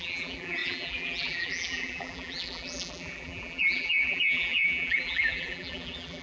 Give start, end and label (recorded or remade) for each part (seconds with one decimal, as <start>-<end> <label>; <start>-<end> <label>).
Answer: 0.0-6.2 remade